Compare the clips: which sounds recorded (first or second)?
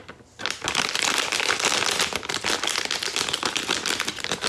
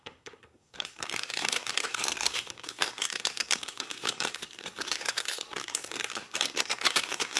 first